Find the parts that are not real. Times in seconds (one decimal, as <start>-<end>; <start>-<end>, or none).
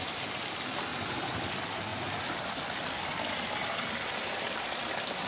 0.9-1.4